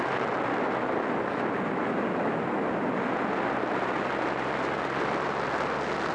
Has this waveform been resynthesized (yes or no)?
no